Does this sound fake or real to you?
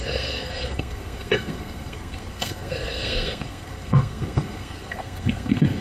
fake